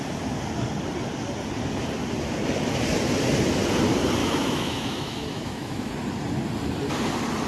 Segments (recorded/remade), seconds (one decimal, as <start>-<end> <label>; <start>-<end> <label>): 0.0-4.2 recorded; 4.2-5.9 remade; 5.9-7.5 recorded